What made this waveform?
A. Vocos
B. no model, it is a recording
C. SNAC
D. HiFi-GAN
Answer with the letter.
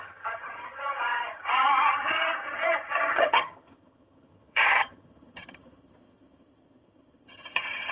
D